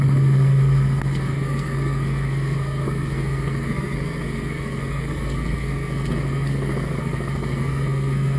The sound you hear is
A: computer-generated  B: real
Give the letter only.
A